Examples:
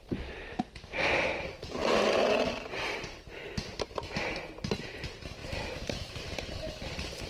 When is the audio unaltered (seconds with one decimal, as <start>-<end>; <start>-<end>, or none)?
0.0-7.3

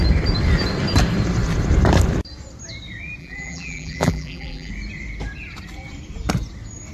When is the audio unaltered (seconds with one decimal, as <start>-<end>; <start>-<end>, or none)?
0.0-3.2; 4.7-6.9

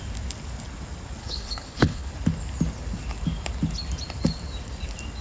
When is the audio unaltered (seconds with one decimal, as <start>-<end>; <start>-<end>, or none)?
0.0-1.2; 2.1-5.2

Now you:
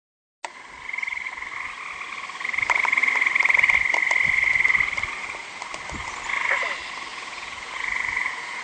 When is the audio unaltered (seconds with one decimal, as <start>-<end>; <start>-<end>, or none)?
0.0-7.1